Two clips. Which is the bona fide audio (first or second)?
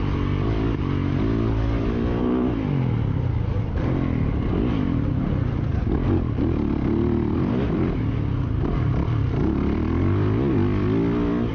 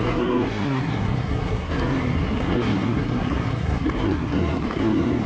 first